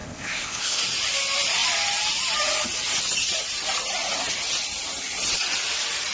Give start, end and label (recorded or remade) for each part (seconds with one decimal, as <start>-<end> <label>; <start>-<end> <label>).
0.0-0.8 remade; 0.8-6.1 recorded